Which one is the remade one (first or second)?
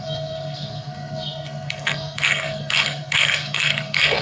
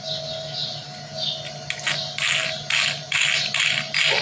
first